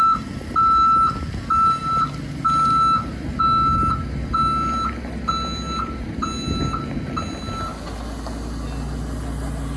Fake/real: real